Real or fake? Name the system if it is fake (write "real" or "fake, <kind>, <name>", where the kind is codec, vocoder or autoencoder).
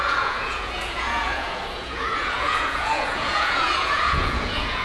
fake, vocoder, Vocos